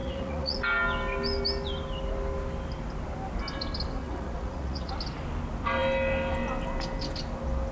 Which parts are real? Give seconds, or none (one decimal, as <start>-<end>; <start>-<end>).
0.6-4.0; 4.9-7.7